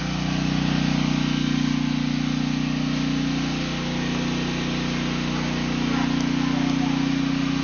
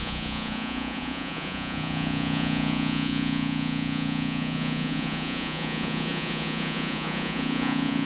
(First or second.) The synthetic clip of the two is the second